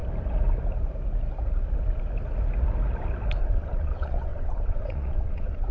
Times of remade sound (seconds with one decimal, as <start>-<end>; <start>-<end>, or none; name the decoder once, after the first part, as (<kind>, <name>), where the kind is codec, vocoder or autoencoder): 3.4-5.7 (vocoder, WaveNeXt)